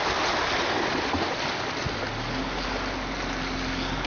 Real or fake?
real